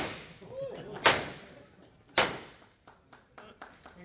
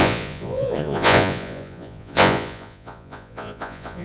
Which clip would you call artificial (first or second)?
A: second